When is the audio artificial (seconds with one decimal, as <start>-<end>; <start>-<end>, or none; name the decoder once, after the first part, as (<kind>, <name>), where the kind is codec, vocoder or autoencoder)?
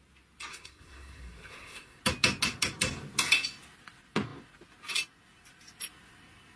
0.5-2.0 (codec, SNAC)